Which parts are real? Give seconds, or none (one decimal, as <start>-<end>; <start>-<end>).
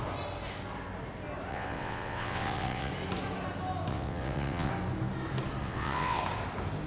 0.0-1.5; 2.9-3.9; 4.7-5.6; 6.2-6.9